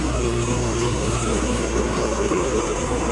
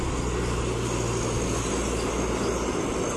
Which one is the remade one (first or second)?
first